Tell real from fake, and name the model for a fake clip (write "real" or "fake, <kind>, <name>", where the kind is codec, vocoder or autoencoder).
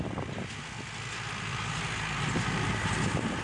real